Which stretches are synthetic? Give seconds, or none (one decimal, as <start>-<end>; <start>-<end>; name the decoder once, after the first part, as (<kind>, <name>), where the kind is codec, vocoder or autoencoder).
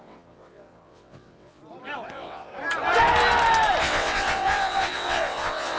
0.0-1.6 (vocoder, WaveNeXt); 2.1-2.5; 3.8-5.8